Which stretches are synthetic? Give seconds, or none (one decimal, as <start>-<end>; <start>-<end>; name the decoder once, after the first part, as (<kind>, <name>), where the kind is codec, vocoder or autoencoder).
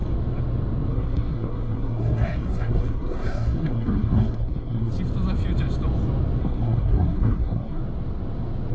0.9-4.9 (codec, SNAC); 6.4-7.8